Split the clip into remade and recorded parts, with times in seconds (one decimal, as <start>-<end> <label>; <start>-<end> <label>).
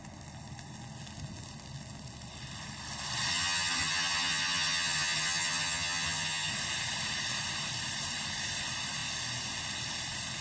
0.0-3.3 recorded; 3.3-6.5 remade; 6.5-10.4 recorded